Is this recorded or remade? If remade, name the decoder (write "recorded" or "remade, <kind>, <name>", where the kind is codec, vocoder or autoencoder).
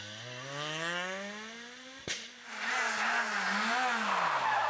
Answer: recorded